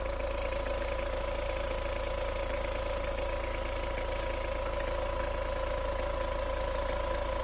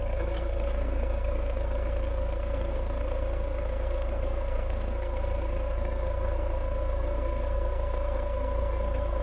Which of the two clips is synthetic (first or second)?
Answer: second